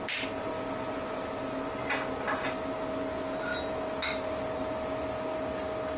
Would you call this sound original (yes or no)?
yes